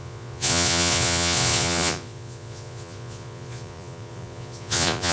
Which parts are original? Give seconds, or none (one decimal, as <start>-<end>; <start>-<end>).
none